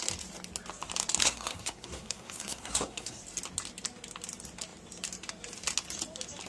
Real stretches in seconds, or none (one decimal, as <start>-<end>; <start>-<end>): 0.0-1.2; 3.2-6.5